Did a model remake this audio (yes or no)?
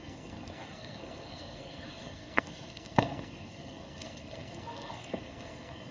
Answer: yes